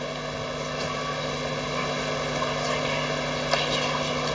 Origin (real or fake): real